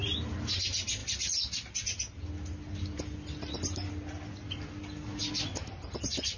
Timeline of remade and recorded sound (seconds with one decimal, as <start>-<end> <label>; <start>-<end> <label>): 0.0-6.4 recorded